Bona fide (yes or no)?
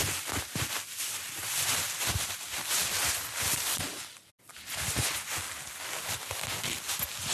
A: yes